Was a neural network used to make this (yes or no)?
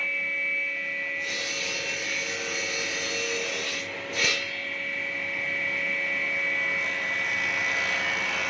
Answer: no